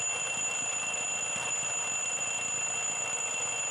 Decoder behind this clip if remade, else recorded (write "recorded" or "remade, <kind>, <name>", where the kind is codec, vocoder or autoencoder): recorded